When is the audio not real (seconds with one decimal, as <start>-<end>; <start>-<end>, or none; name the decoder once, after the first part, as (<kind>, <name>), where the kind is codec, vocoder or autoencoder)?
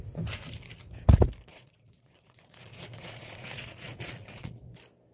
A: 1.5-4.6 (vocoder, Vocos)